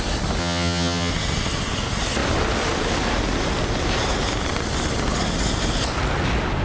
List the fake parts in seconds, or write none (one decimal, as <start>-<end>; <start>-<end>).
0.4-1.1